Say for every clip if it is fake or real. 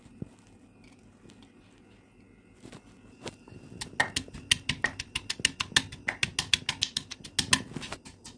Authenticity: real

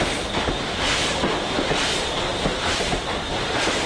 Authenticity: real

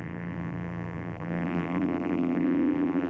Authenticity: fake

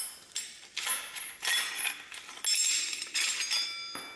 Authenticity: real